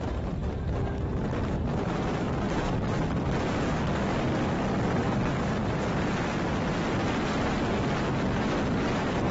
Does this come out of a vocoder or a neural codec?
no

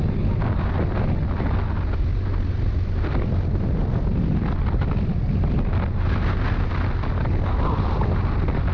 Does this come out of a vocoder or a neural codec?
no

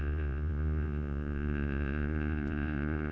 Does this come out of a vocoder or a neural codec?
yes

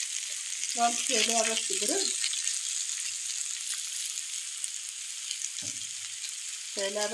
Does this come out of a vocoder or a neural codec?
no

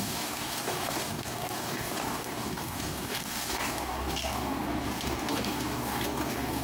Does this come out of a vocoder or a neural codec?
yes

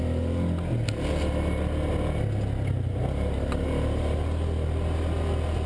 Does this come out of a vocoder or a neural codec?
no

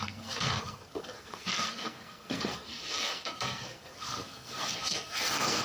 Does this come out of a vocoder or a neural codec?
yes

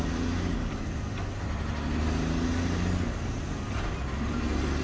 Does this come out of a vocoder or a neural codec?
no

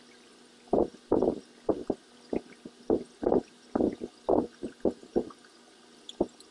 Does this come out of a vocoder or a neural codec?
no